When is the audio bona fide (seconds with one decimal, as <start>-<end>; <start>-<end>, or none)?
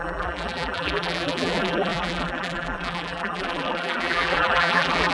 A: none